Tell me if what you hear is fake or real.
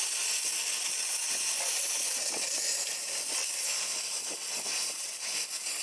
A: real